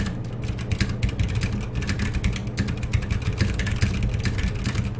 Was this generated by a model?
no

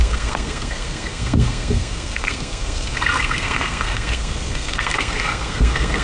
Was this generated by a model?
yes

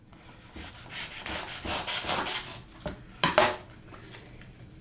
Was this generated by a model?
no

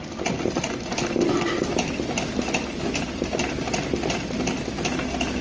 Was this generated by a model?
no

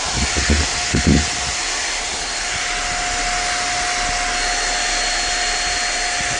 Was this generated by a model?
no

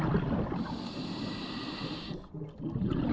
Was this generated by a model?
no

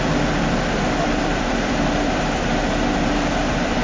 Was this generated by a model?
yes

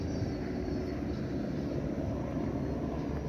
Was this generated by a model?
no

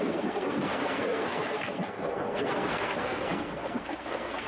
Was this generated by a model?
yes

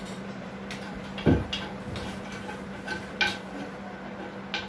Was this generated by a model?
no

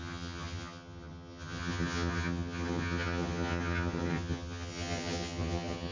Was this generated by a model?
yes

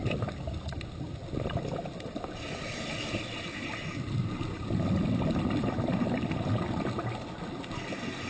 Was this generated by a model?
no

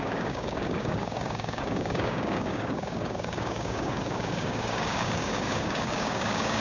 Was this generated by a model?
yes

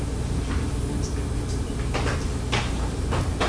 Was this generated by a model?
no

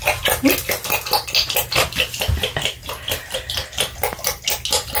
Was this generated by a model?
no